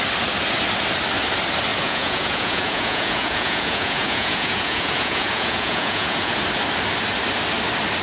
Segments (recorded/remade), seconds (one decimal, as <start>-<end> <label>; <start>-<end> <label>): 0.0-1.7 recorded; 1.7-6.3 remade; 6.3-8.0 recorded